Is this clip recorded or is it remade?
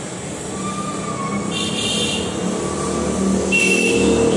recorded